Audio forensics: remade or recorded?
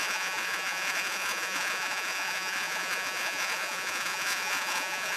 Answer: remade